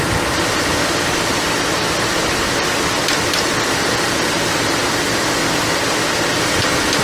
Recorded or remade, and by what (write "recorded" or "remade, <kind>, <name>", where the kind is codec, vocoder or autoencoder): recorded